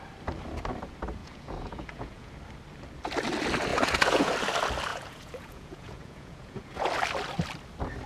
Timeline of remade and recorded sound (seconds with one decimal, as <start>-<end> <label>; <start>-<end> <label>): 0.0-1.2 recorded; 1.2-2.3 remade; 2.3-3.7 recorded; 3.7-4.3 remade; 4.3-4.9 recorded; 4.9-6.9 remade; 6.9-8.1 recorded